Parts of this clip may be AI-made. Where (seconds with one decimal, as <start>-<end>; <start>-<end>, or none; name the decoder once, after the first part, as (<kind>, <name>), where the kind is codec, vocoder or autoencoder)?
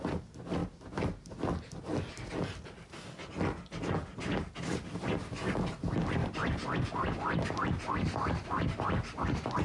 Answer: none